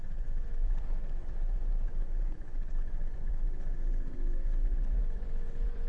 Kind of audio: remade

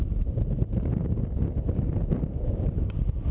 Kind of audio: recorded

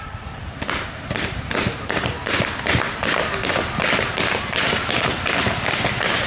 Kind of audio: recorded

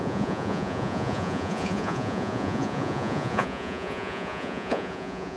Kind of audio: remade